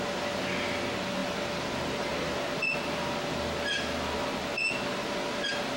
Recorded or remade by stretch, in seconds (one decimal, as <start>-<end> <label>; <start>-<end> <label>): 0.0-5.8 recorded